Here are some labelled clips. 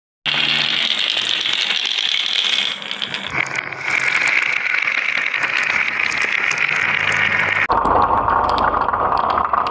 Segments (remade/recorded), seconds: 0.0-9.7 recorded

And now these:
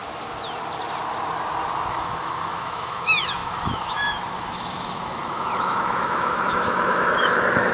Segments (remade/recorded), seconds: 0.0-1.9 recorded; 1.9-7.7 remade

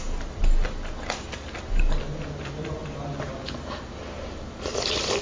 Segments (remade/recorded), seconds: 0.0-5.2 recorded

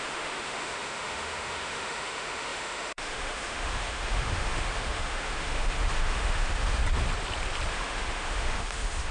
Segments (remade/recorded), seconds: 0.0-6.8 remade; 6.8-7.7 recorded; 7.7-9.1 remade

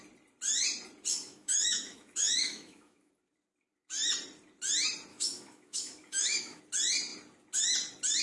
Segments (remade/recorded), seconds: 0.0-1.1 recorded; 1.1-3.1 remade; 3.1-5.1 recorded; 5.1-6.6 remade; 6.6-8.2 recorded

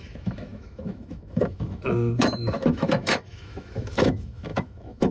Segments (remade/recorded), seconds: 0.0-5.1 remade

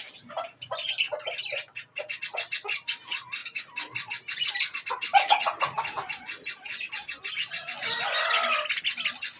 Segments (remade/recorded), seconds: 0.0-9.4 recorded